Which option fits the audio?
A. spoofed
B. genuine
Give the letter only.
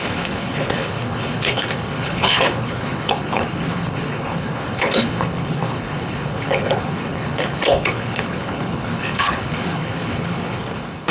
A